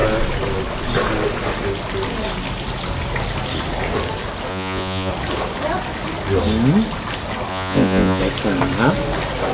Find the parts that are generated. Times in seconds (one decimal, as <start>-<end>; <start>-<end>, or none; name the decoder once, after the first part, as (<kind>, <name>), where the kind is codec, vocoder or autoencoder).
4.5-5.1 (vocoder, Vocos); 7.5-8.2